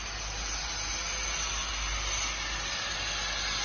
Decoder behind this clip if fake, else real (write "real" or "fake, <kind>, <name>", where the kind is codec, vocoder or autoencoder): real